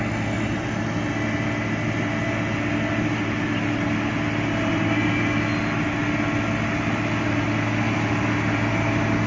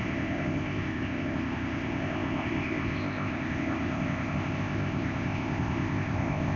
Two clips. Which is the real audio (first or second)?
first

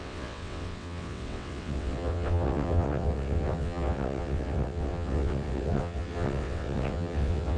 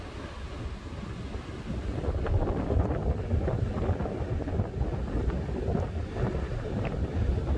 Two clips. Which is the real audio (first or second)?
second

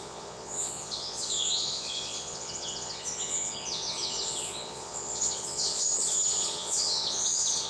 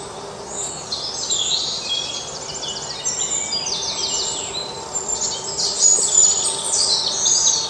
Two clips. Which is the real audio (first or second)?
second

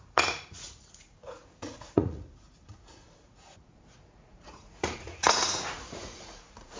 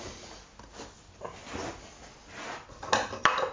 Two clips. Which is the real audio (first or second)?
second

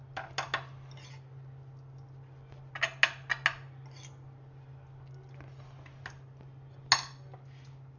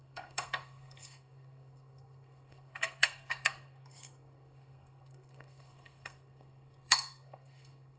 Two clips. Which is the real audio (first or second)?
first